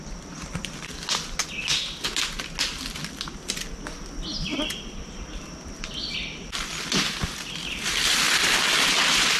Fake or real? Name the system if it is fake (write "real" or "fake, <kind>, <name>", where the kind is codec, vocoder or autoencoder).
real